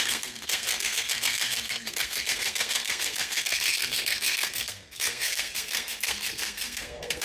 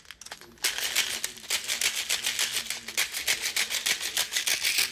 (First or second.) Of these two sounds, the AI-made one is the first